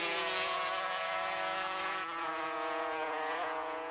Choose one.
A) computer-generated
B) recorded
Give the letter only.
A